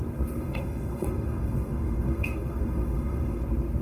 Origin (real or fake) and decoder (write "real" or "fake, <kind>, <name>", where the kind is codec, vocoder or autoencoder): fake, codec, SNAC